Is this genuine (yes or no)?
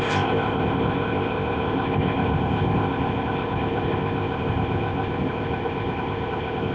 no